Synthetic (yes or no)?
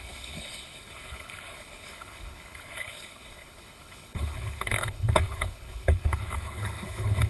yes